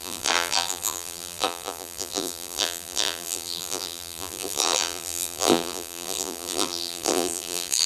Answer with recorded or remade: remade